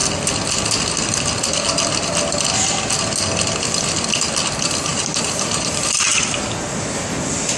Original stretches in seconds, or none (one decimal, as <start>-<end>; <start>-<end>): 0.0-4.9; 6.4-7.6